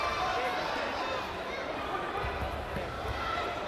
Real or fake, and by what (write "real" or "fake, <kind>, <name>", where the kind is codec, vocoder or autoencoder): real